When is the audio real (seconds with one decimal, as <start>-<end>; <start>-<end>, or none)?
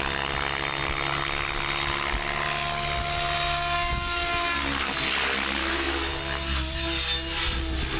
0.0-5.6; 6.1-8.0